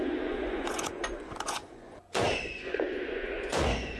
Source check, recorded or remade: remade